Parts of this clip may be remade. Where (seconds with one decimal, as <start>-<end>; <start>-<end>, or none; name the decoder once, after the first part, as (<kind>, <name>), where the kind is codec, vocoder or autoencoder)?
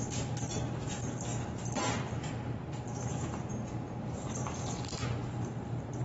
none